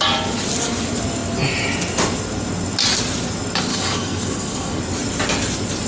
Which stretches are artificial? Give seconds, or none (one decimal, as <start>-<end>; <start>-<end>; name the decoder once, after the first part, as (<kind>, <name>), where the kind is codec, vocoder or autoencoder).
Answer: 3.7-4.8 (codec, SNAC)